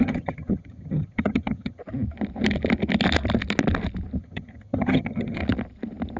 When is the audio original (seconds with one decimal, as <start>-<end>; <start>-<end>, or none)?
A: 1.8-4.2; 5.4-6.2